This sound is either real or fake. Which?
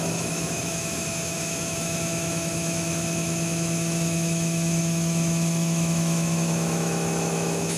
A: fake